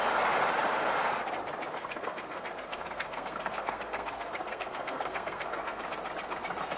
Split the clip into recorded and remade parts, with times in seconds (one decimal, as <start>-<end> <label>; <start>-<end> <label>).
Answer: 0.0-1.7 recorded; 1.7-5.8 remade; 5.8-6.8 recorded